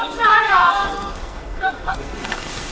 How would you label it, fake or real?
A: fake